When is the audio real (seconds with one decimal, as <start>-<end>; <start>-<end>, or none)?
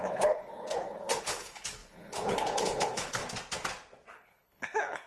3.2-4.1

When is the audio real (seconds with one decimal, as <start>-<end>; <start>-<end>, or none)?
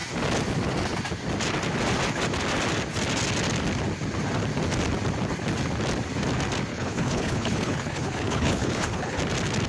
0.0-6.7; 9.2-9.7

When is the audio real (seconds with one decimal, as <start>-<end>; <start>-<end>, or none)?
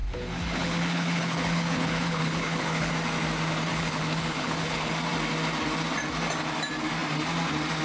2.9-3.7; 4.9-7.8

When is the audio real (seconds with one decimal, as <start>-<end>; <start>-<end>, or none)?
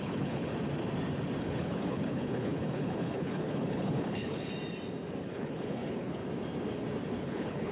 0.5-1.4; 4.5-5.2; 6.2-7.2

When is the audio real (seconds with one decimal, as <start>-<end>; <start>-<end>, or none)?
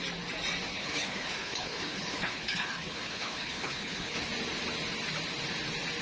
0.0-0.7; 4.3-6.0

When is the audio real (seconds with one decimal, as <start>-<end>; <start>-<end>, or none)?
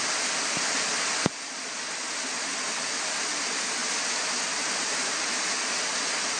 0.0-6.4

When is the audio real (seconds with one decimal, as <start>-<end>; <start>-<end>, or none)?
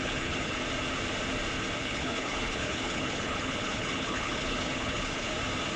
0.6-1.8; 5.3-5.8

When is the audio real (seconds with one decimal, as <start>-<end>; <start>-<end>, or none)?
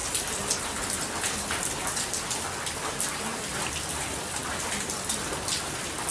0.0-6.1